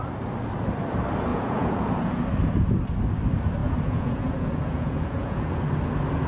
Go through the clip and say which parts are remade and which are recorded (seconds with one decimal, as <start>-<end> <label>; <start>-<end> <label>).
0.0-1.3 recorded; 1.3-2.2 remade; 2.2-3.6 recorded; 3.6-5.6 remade; 5.6-6.3 recorded